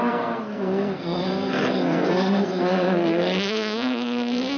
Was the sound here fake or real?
fake